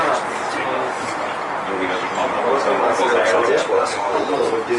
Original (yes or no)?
yes